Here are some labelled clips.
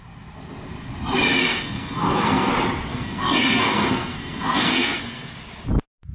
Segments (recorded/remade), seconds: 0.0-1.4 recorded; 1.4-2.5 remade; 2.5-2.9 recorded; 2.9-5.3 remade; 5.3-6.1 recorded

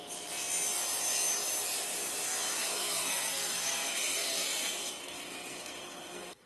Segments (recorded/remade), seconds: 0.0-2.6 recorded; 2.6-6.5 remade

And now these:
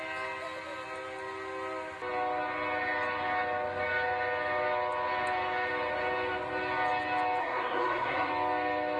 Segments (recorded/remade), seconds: 0.0-7.4 recorded; 7.4-8.3 remade; 8.3-9.0 recorded

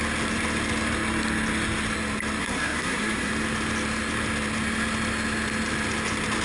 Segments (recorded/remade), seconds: 0.0-2.4 recorded; 2.4-3.3 remade; 3.3-6.4 recorded

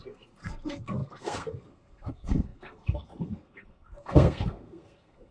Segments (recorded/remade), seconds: 0.0-5.3 remade

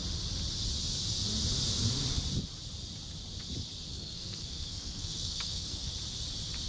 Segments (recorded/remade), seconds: 0.0-3.9 recorded; 3.9-5.9 remade; 5.9-6.7 recorded